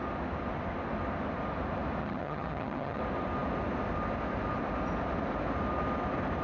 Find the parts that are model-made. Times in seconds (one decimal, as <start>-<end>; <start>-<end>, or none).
2.0-3.0